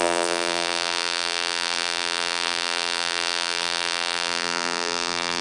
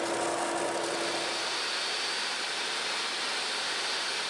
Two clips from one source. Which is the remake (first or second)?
first